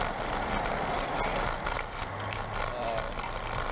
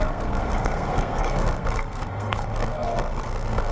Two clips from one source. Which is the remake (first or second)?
second